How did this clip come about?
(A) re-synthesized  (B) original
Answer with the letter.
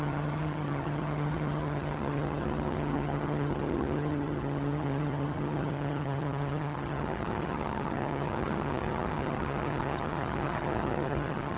A